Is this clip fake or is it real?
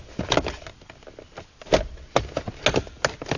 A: real